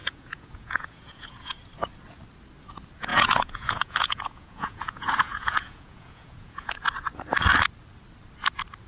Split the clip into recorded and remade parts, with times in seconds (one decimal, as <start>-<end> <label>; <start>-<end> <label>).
0.0-1.6 remade; 1.6-3.1 recorded; 3.1-6.7 remade; 6.7-8.9 recorded